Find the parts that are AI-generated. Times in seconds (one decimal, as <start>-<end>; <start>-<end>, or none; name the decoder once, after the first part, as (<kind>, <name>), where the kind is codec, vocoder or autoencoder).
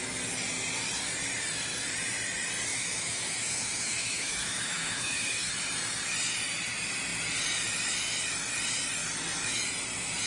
2.7-5.5 (autoencoder, DAC-VAE)